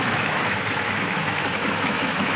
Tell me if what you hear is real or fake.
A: fake